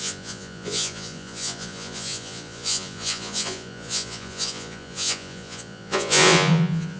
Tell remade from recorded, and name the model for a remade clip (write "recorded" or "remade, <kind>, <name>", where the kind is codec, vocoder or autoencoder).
remade, vocoder, Vocos